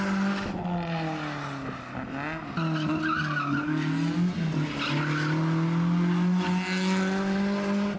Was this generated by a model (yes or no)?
no